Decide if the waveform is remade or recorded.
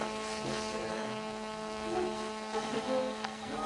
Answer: remade